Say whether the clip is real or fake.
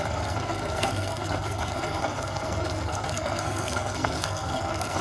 fake